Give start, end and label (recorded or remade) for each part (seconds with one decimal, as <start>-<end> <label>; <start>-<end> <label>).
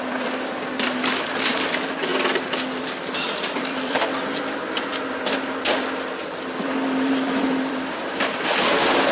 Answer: 0.0-2.1 remade; 2.1-2.8 recorded; 2.8-9.1 remade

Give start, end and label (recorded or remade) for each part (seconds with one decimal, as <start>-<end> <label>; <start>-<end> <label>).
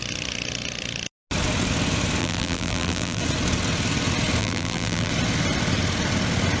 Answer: 0.0-2.2 recorded; 2.2-3.2 remade; 3.2-4.4 recorded; 4.4-5.1 remade; 5.1-6.6 recorded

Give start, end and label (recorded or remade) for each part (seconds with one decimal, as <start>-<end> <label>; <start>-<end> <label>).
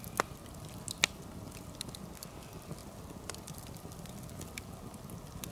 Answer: 0.0-5.5 recorded